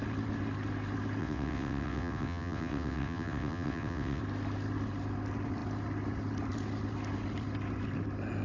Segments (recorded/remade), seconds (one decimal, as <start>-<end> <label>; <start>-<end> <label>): 0.0-1.2 recorded; 1.2-4.2 remade; 4.2-8.4 recorded